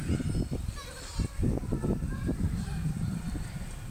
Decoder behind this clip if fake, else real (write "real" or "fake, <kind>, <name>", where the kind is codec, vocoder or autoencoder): real